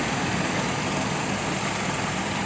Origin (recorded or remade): recorded